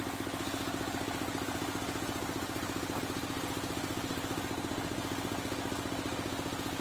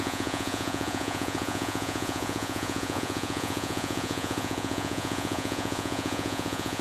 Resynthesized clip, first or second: second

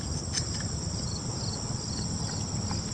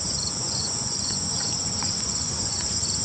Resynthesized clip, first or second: second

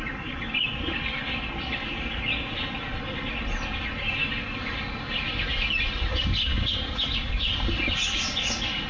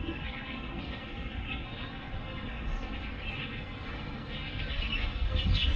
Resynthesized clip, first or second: second